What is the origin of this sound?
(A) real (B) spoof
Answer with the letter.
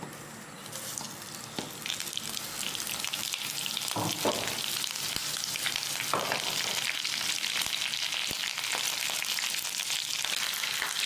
A